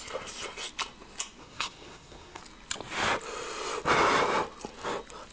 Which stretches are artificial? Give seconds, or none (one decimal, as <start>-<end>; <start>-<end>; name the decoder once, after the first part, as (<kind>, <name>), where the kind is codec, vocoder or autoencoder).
1.4-2.4 (codec, SNAC)